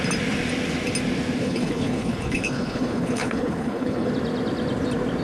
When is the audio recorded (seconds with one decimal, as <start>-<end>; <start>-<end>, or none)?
0.0-1.4; 4.1-5.2